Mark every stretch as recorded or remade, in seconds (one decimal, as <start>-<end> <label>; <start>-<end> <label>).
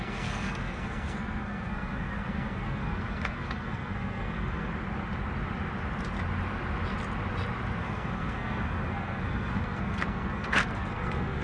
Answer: 0.0-4.7 remade; 4.7-7.8 recorded; 7.8-11.4 remade